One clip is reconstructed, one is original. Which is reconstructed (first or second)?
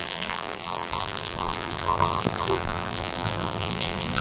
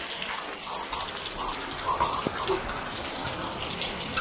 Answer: first